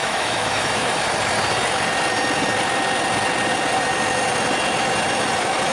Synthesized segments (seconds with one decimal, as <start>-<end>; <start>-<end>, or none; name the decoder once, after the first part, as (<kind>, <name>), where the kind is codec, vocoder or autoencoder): 0.0-1.0 (autoencoder, DAC-VAE)